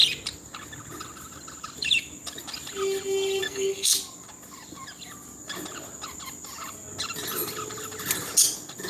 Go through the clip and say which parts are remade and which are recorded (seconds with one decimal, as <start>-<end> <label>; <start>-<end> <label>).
0.0-3.4 recorded; 3.4-3.9 remade; 3.9-8.9 recorded